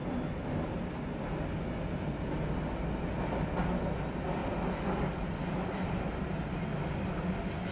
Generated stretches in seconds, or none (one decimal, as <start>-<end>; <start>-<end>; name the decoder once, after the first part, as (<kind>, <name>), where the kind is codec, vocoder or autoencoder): none